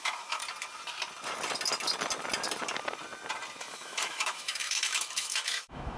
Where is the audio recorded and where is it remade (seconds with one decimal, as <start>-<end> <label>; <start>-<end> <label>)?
0.0-0.4 remade; 0.4-3.6 recorded; 3.6-6.0 remade